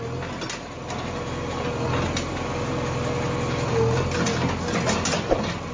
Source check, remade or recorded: recorded